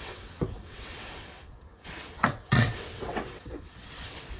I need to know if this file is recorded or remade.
remade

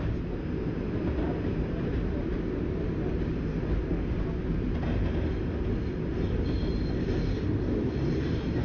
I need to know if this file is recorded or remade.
recorded